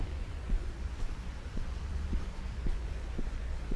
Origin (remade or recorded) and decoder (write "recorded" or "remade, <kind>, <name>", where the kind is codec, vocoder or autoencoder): remade, vocoder, Vocos